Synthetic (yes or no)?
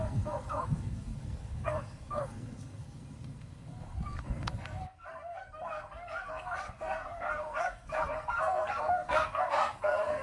yes